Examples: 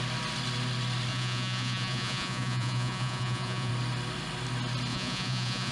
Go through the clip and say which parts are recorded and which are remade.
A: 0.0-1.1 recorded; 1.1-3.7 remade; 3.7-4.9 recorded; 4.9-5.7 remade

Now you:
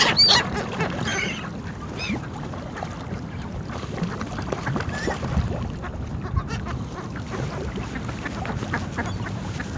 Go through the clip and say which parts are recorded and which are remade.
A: 0.0-9.8 recorded

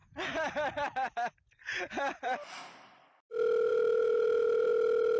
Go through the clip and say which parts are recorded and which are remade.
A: 0.0-3.7 recorded; 3.7-4.7 remade; 4.7-5.2 recorded

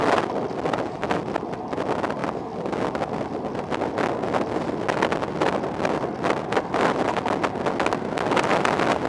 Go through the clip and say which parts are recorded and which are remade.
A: 0.0-9.1 recorded

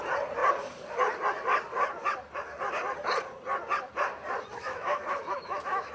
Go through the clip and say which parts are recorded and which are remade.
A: 0.0-4.6 recorded; 4.6-5.9 remade